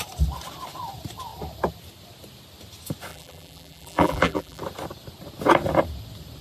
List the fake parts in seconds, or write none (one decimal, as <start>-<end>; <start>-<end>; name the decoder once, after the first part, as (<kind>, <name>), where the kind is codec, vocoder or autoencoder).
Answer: 3.1-4.6 (vocoder, BigVGAN v2)